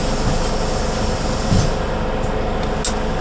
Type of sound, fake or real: real